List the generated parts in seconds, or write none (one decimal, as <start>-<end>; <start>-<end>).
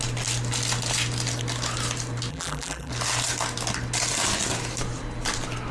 2.3-2.9